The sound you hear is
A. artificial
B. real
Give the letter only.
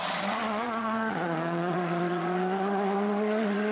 A